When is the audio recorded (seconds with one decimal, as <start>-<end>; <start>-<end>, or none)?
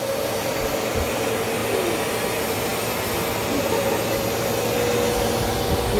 0.0-6.0